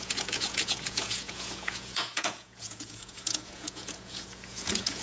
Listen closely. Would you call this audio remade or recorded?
remade